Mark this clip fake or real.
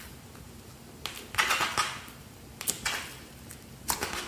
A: real